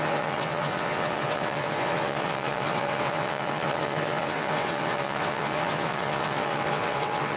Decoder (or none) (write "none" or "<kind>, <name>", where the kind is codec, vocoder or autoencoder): vocoder, WaveNeXt